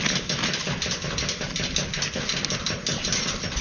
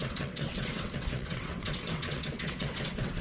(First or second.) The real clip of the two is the first